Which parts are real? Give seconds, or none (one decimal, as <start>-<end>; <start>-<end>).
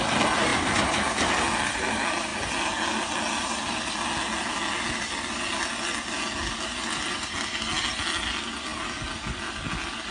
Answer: 0.0-10.1